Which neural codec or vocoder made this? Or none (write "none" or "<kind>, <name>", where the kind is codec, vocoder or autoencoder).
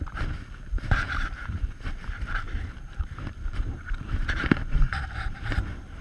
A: vocoder, BigVGAN v2